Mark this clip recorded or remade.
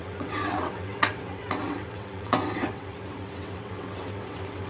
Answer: remade